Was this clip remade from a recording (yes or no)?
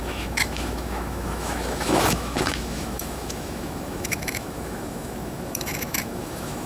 yes